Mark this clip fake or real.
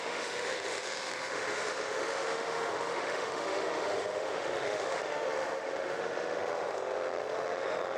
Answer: fake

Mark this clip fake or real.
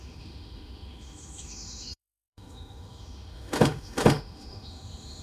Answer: fake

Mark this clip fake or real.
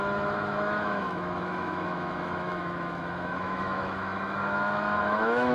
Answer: fake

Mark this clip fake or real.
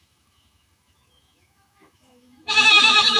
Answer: fake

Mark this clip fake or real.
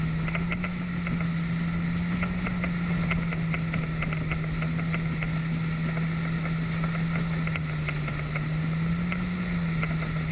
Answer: real